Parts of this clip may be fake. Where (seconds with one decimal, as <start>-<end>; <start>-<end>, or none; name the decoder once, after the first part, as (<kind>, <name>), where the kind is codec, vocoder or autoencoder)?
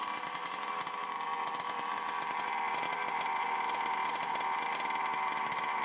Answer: none